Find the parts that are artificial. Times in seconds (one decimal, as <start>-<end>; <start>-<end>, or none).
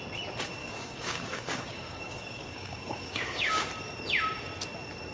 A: 0.6-3.7